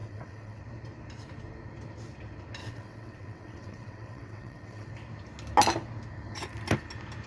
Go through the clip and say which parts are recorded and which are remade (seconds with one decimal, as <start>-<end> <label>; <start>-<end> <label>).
0.0-0.6 remade; 0.6-2.6 recorded; 2.6-4.9 remade; 4.9-7.3 recorded